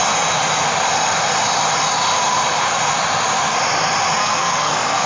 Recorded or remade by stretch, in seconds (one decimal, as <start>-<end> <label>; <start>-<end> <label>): 0.0-4.2 recorded; 4.2-5.1 remade